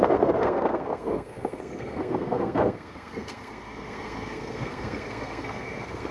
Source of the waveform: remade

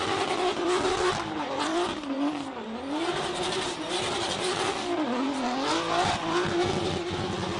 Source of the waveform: recorded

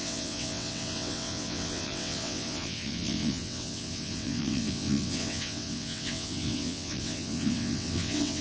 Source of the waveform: remade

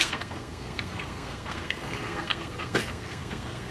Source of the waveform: remade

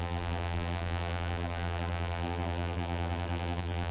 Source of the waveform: remade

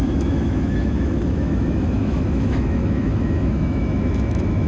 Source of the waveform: remade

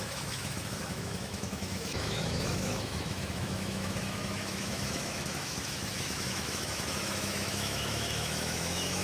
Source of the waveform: remade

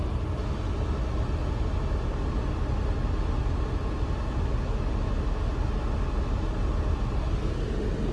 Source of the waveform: recorded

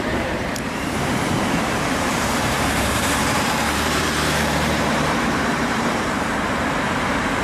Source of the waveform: remade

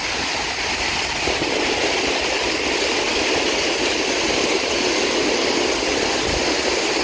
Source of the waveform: recorded